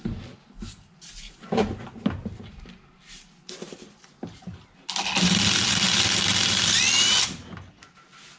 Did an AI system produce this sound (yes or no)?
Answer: no